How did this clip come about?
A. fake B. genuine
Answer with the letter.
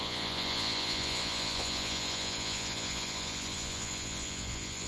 A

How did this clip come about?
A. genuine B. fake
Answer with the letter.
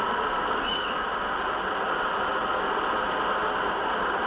A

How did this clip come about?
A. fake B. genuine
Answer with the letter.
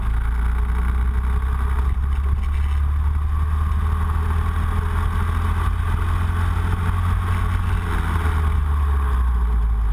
B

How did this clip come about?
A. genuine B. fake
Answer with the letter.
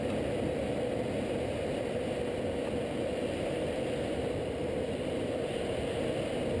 A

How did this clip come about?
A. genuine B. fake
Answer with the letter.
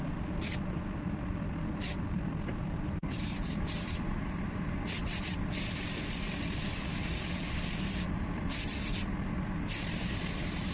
B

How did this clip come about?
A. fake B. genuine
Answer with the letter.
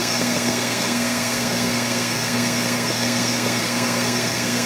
A